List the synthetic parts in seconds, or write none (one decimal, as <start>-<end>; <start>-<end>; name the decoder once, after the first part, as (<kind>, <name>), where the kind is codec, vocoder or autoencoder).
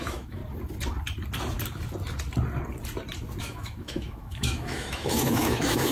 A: 0.0-0.4 (autoencoder, DAC-VAE); 3.4-5.9